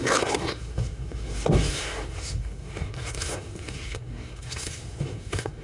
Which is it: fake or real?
fake